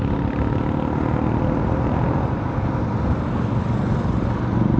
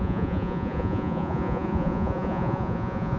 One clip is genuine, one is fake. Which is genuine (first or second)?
first